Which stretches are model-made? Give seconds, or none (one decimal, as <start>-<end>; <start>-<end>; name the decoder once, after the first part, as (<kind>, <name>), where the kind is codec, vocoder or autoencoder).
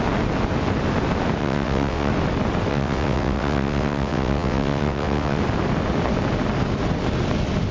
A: 1.4-2.1 (vocoder, WaveNeXt); 2.7-5.4